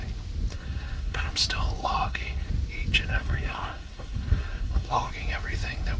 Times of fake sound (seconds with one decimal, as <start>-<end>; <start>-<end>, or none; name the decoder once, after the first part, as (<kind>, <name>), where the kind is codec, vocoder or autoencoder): 0.5-1.3 (codec, SNAC); 1.8-2.5; 3.1-5.1